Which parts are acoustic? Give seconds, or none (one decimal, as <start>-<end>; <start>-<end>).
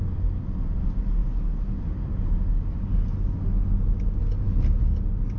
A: 0.0-5.4